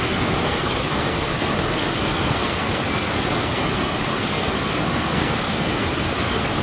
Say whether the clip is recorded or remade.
remade